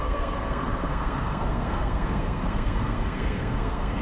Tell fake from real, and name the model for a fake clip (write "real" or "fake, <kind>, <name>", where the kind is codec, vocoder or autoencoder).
fake, codec, SNAC